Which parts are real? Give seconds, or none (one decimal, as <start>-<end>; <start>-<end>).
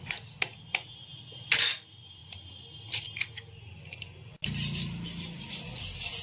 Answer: 0.0-6.2